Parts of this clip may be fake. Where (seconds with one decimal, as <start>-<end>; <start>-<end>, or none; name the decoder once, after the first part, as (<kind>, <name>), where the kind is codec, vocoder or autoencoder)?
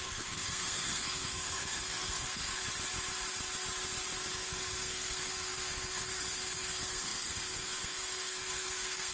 0.0-2.6 (codec, SNAC); 4.3-9.1